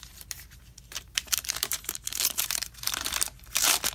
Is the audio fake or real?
fake